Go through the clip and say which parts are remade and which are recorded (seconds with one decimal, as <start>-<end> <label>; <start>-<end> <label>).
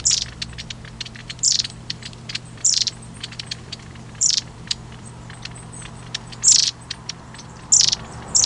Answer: 0.0-1.2 recorded; 1.2-5.1 remade; 5.1-6.6 recorded; 6.6-7.7 remade; 7.7-8.5 recorded